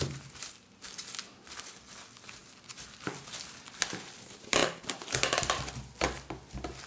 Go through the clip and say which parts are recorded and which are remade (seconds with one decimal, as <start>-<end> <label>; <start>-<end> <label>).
0.0-6.9 recorded